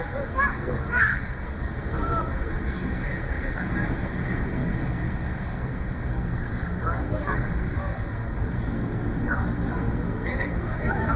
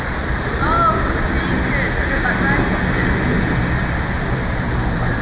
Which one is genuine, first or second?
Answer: second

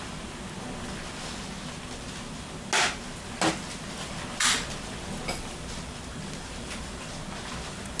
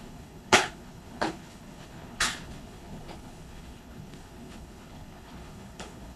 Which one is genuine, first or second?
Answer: first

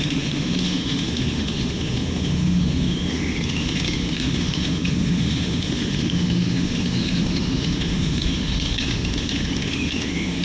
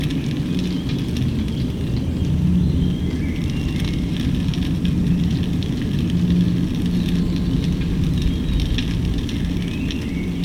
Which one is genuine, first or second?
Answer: second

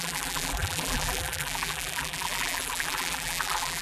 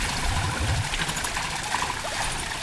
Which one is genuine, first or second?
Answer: second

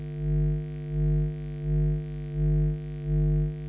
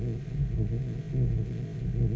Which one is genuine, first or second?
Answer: first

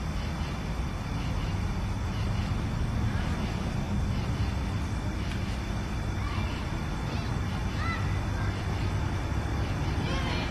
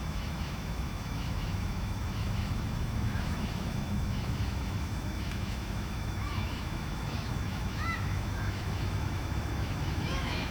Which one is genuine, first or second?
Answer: first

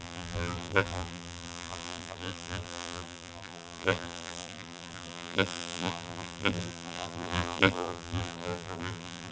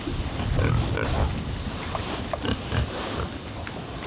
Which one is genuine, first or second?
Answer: second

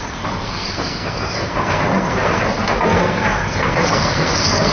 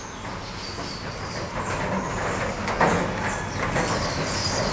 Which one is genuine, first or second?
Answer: second